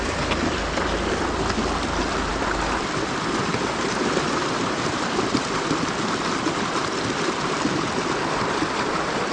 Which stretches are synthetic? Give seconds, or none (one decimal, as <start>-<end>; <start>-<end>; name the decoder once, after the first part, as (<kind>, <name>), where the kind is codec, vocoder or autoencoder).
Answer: none